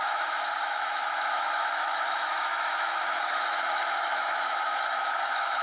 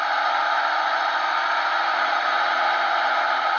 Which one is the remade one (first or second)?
first